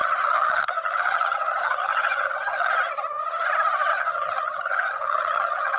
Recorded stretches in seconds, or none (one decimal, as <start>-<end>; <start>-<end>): 2.7-3.9